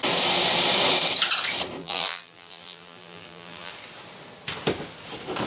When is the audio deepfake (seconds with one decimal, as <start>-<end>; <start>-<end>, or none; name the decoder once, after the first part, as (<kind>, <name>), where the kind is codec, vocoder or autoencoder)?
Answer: 1.8-3.7 (vocoder, BigVGAN v2)